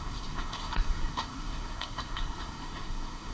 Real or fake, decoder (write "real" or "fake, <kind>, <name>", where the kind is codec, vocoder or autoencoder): fake, codec, SNAC